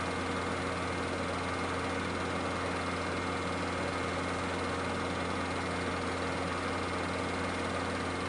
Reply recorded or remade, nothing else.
recorded